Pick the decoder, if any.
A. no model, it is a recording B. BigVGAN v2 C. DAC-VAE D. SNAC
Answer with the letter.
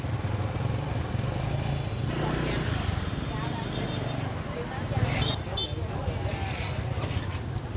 A